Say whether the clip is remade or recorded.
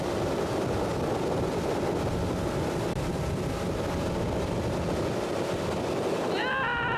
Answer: recorded